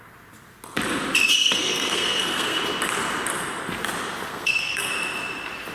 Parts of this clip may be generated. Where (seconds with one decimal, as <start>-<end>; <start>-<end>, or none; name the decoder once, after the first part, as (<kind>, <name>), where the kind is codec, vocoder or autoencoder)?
1.4-2.6 (codec, SNAC); 4.3-4.9